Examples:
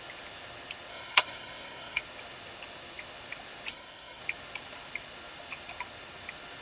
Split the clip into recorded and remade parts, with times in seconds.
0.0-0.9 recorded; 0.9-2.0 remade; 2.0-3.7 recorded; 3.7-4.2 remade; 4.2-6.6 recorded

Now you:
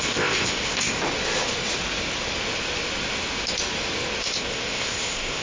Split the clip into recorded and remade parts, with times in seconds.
0.0-1.0 remade; 1.0-4.2 recorded; 4.2-5.4 remade

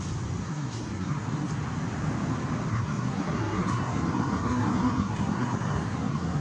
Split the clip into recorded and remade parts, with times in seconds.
0.0-0.4 recorded; 0.4-1.5 remade; 1.5-2.7 recorded; 2.7-6.4 remade

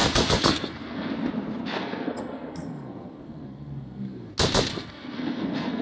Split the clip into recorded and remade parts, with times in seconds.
0.0-1.1 remade; 1.1-1.8 recorded; 1.8-4.3 remade; 4.3-4.7 recorded; 4.7-5.8 remade

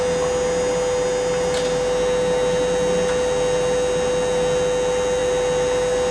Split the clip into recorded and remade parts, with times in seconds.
0.0-6.1 recorded

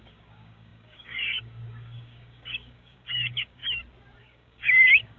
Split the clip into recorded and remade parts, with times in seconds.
0.0-3.6 remade; 3.6-4.2 recorded; 4.2-5.2 remade

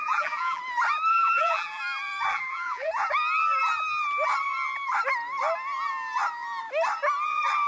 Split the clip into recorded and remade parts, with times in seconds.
0.0-0.6 remade; 0.6-1.1 recorded; 1.1-1.8 remade; 1.8-2.3 recorded; 2.3-2.9 remade; 2.9-7.7 recorded